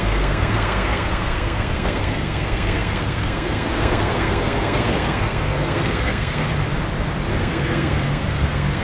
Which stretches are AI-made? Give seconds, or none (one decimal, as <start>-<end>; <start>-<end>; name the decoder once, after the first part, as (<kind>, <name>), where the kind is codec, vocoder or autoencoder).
0.0-6.5 (codec, SNAC); 7.4-8.8